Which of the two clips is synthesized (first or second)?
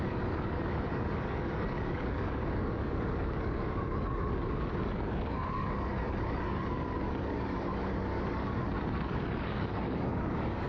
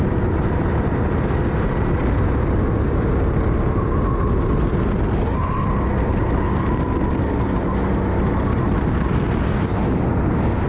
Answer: first